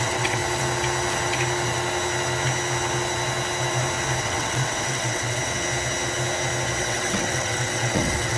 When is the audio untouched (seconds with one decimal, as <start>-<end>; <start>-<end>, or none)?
0.4-4.2; 5.4-6.8